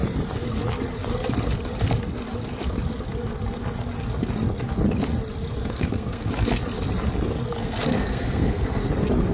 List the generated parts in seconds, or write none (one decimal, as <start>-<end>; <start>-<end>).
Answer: 5.6-6.3; 7.6-8.8